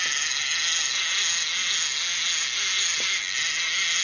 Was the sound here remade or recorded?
recorded